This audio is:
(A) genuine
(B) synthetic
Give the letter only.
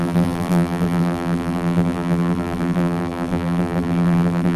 B